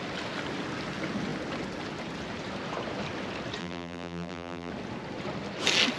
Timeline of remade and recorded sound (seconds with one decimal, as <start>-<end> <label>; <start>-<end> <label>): 0.0-3.6 recorded; 3.6-4.7 remade; 4.7-6.0 recorded